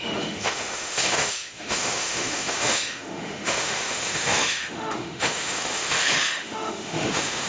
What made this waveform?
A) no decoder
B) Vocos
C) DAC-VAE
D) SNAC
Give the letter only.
C